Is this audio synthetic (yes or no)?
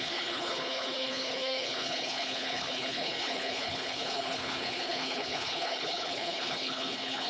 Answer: yes